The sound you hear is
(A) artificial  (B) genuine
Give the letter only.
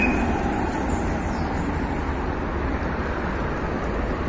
B